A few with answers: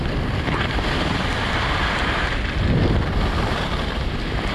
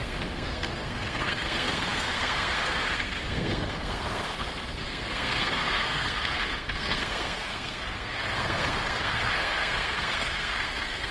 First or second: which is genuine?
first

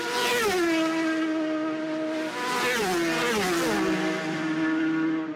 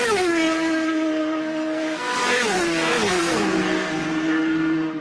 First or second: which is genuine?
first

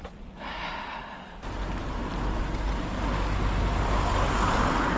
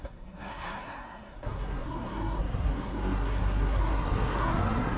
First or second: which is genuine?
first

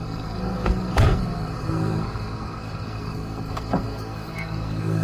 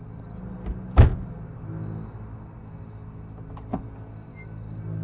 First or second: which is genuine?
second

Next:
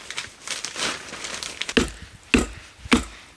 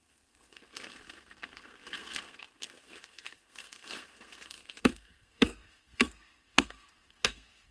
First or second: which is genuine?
first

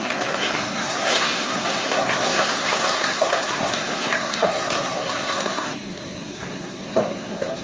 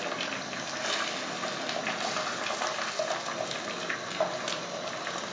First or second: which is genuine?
second